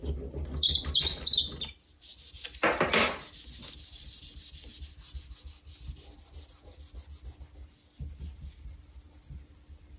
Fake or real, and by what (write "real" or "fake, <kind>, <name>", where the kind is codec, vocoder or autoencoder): real